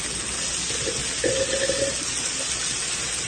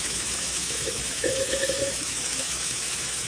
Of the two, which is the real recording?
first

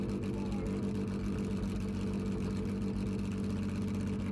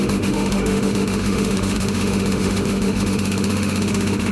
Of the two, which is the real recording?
first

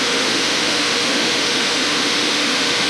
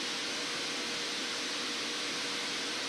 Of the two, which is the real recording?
second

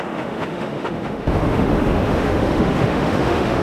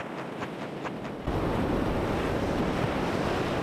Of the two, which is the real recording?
second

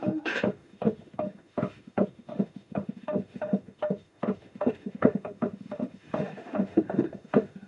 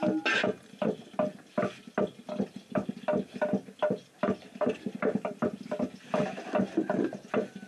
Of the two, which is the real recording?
second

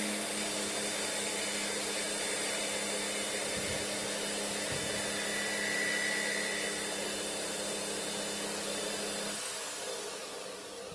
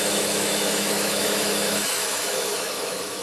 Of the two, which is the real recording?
first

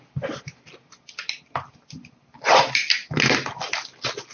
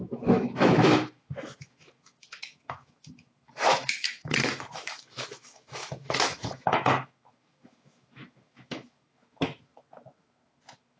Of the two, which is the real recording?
first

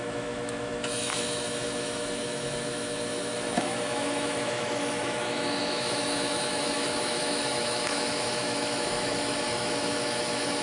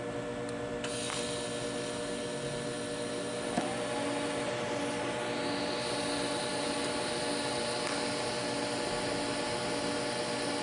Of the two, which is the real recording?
second